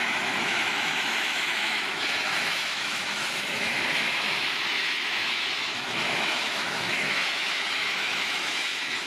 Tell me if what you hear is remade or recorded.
remade